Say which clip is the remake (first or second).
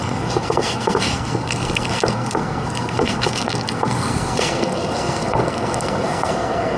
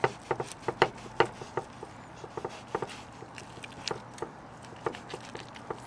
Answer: first